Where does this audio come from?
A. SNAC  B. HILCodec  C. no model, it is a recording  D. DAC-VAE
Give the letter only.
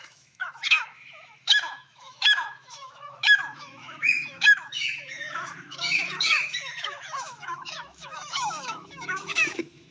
D